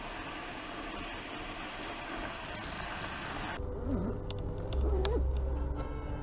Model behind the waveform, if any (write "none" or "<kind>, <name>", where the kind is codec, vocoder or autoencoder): none